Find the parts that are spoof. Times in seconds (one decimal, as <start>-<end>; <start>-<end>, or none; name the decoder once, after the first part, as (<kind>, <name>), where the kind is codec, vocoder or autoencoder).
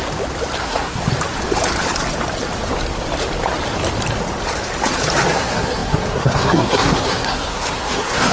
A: 0.6-1.0 (codec, SNAC); 5.3-8.3